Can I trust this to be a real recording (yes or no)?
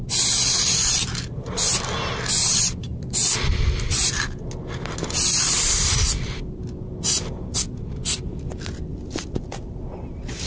yes